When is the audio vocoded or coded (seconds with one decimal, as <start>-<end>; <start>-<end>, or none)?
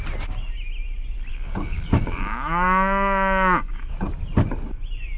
1.3-4.1